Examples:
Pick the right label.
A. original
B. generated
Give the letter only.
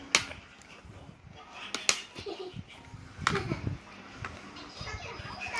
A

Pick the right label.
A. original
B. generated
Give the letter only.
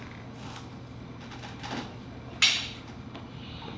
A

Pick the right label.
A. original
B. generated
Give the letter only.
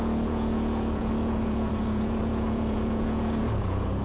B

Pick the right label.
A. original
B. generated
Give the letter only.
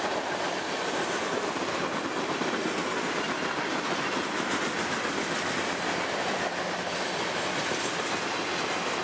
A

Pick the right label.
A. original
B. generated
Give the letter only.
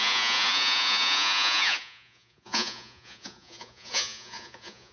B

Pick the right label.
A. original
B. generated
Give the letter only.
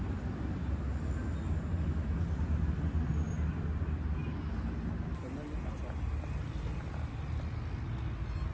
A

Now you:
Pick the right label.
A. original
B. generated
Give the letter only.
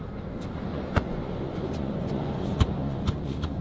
B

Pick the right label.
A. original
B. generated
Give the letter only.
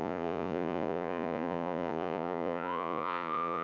B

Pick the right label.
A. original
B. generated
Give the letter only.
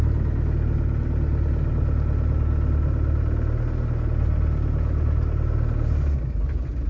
A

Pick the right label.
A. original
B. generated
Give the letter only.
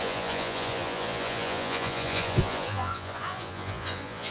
B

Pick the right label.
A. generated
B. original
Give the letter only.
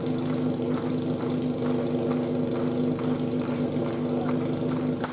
B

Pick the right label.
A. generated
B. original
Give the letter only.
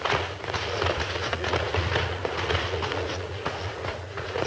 A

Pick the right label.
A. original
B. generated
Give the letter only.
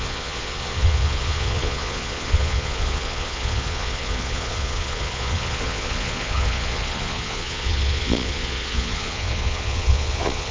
B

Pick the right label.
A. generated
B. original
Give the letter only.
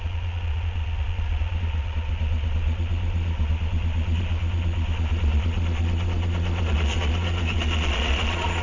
A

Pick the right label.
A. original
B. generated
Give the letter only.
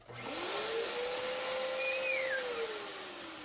A